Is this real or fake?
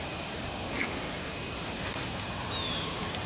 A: real